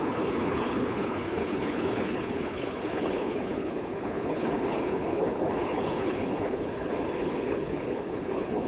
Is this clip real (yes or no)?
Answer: no